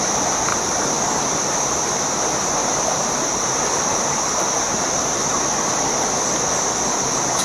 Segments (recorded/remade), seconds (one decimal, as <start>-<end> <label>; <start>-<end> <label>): 0.0-0.5 recorded; 0.5-1.1 remade; 1.1-2.6 recorded; 2.6-3.3 remade; 3.3-3.9 recorded; 3.9-4.5 remade; 4.5-7.4 recorded

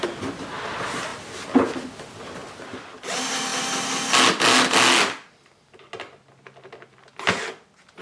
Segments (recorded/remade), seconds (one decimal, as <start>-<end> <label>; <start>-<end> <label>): 0.0-8.0 recorded

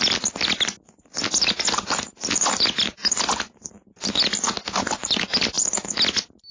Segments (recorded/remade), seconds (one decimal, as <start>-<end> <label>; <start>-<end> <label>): 0.0-6.5 recorded

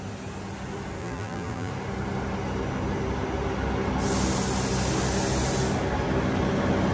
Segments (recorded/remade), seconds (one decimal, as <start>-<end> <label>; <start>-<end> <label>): 0.0-1.0 recorded; 1.0-1.7 remade; 1.7-6.9 recorded

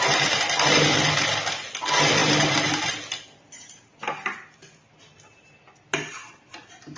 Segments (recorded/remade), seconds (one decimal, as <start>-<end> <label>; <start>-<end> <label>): 0.0-7.0 recorded

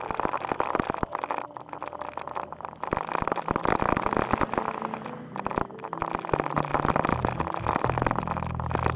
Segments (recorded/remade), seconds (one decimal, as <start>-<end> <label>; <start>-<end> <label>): 0.0-9.0 recorded

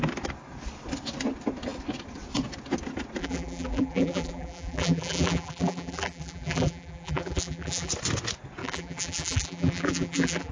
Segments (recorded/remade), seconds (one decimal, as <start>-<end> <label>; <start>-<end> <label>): 0.0-3.2 recorded; 3.2-7.9 remade; 7.9-8.6 recorded; 8.6-10.5 remade